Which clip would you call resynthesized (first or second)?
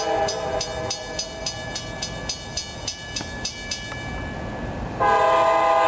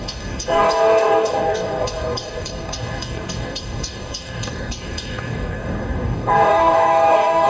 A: second